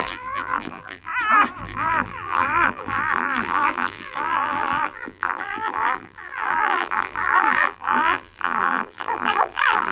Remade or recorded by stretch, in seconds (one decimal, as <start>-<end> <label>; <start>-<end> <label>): 0.0-1.1 remade; 1.1-1.6 recorded; 1.6-9.9 remade